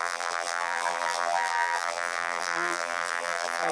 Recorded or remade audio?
remade